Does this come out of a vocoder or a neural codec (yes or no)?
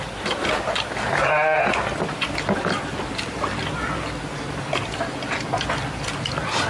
no